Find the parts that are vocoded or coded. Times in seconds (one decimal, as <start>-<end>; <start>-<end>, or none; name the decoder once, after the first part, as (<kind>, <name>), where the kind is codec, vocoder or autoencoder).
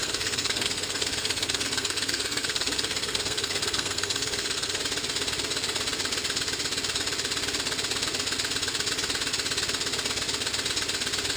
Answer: 0.0-4.8 (codec, SNAC)